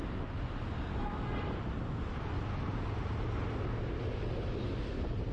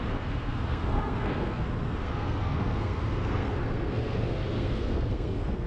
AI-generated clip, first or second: second